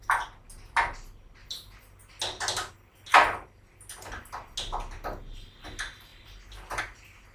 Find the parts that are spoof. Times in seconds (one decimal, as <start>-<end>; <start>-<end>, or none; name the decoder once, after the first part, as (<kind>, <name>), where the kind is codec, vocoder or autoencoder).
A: none